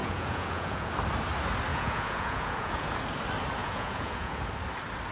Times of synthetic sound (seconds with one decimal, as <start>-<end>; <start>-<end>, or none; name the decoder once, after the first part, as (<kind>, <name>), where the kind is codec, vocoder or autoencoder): 0.0-0.9 (vocoder, Vocos); 1.7-2.9; 3.6-4.4